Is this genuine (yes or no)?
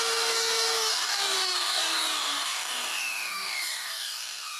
no